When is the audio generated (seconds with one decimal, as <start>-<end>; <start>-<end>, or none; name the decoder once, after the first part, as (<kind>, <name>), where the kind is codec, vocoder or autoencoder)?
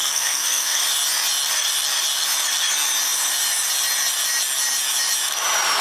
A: 0.0-0.8 (codec, SNAC)